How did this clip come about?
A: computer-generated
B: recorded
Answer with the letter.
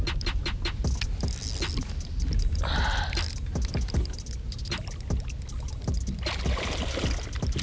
B